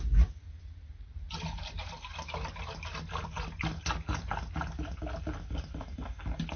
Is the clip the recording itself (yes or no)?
yes